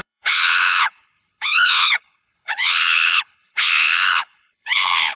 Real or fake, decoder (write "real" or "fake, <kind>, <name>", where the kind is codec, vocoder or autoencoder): fake, codec, HILCodec